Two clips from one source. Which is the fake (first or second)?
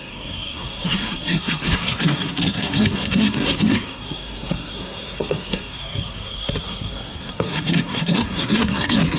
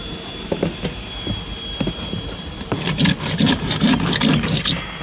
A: first